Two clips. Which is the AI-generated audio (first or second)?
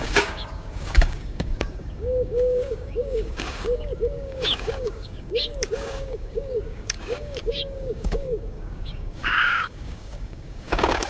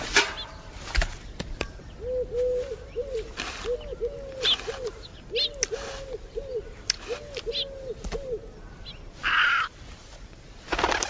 first